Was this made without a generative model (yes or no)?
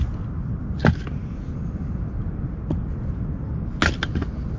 yes